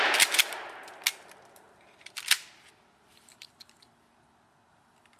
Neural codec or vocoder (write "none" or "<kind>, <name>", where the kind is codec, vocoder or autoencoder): none